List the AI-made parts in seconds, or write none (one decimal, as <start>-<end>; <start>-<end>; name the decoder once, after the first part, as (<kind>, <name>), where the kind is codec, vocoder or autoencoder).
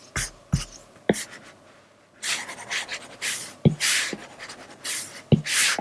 none